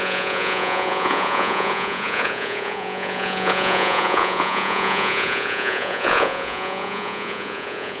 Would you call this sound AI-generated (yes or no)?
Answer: yes